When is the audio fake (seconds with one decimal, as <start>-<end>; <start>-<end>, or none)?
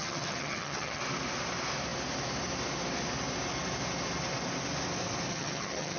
0.0-1.0; 5.3-6.0